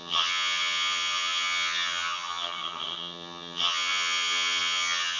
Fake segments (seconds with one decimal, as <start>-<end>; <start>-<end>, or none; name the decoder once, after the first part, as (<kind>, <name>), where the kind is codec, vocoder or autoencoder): 0.0-5.2 (vocoder, HiFi-GAN)